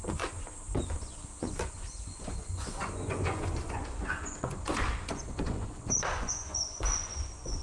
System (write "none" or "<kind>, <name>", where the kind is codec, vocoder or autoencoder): vocoder, Vocos